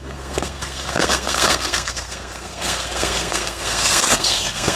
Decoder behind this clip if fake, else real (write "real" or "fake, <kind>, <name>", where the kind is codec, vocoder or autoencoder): fake, codec, SNAC